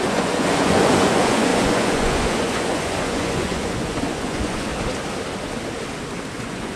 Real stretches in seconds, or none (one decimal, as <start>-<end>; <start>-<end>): 4.7-6.3